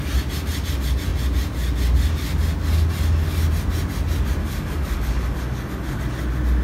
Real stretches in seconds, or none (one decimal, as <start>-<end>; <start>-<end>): 0.0-4.4; 6.0-6.6